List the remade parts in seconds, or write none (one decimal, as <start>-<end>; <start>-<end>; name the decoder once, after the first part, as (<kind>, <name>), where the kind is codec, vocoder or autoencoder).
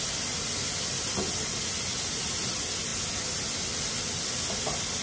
none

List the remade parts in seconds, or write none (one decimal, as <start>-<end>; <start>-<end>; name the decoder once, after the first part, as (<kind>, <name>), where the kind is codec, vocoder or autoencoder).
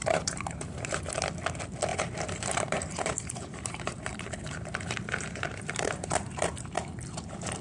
0.0-1.0 (vocoder, BigVGAN v2); 1.9-6.3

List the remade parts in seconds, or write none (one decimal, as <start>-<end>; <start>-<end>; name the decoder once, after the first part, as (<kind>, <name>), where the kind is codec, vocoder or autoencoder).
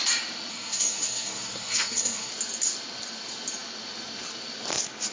0.5-2.3 (codec, SNAC)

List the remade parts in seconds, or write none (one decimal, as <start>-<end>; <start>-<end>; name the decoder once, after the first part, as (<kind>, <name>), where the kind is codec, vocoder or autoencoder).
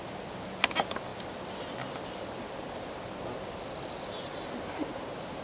none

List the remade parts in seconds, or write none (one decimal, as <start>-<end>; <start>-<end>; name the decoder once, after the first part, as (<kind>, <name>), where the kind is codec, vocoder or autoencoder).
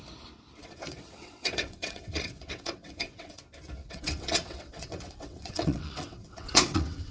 0.6-3.4 (vocoder, WaveNeXt); 3.8-7.1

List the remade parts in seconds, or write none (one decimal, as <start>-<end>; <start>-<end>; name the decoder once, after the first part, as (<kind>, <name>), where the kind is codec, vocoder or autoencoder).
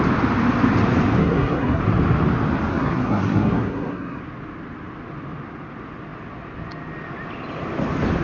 1.2-1.8 (codec, SNAC); 2.7-4.2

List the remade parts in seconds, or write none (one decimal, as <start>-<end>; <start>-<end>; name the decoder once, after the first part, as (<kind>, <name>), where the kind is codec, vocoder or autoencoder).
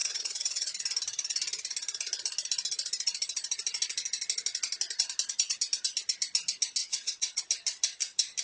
0.0-0.7 (vocoder, WaveNeXt); 6.8-7.4